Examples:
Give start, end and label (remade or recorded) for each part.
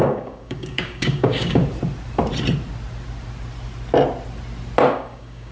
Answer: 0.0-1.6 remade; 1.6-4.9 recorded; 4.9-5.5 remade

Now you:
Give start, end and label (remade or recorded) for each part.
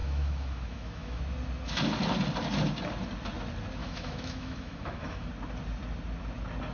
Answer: 0.0-1.2 remade; 1.2-3.8 recorded; 3.8-5.3 remade; 5.3-6.7 recorded